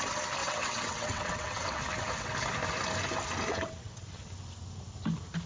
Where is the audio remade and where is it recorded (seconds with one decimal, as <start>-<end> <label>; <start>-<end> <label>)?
0.0-0.4 recorded; 0.4-1.8 remade; 1.8-3.5 recorded; 3.5-4.0 remade; 4.0-5.5 recorded